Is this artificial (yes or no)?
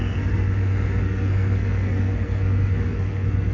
yes